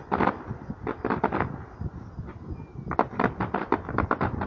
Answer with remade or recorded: recorded